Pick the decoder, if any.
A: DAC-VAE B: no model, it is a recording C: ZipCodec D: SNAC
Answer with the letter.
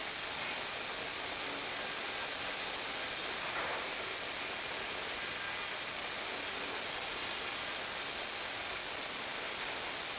B